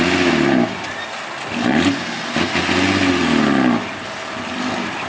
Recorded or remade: recorded